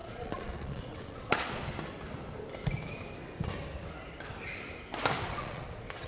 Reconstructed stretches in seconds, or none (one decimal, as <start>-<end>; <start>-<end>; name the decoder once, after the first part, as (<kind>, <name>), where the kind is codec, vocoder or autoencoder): 0.0-1.6 (vocoder, Vocos); 5.3-6.1